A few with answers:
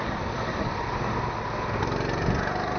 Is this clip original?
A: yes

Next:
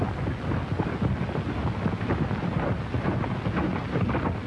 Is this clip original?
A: yes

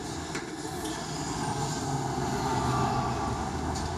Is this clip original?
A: yes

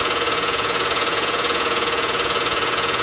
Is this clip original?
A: no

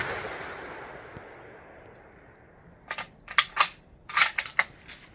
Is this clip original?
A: yes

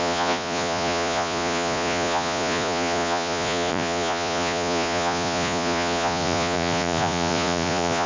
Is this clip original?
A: no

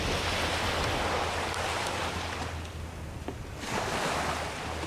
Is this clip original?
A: yes